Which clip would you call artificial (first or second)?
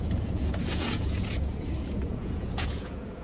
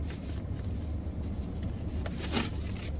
first